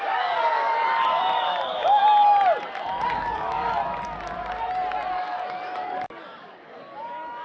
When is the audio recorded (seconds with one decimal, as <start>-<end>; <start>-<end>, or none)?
2.0-3.1; 3.8-5.1